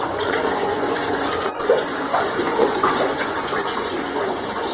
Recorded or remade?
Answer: remade